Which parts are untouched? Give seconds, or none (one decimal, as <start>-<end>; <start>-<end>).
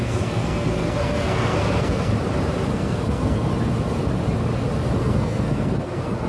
2.1-2.7; 3.5-5.0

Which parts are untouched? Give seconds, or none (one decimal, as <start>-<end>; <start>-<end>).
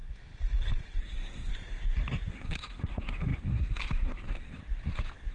0.0-1.0; 1.5-2.3; 4.6-5.3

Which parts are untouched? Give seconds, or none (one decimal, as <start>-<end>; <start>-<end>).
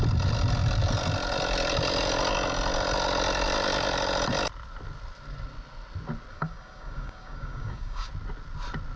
0.0-6.3; 8.1-9.0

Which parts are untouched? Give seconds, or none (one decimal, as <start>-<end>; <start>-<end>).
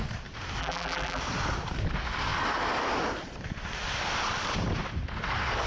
0.0-0.6; 1.2-5.7